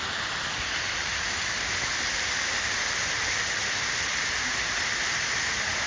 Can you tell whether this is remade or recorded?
recorded